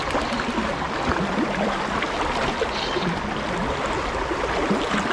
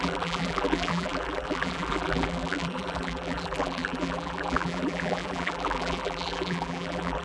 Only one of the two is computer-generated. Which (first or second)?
second